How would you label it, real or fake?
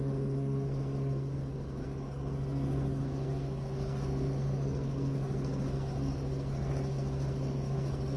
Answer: fake